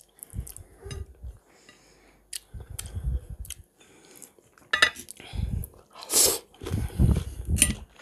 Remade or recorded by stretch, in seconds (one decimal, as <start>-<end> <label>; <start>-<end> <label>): 0.0-8.0 recorded